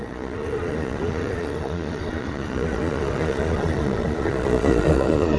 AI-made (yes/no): yes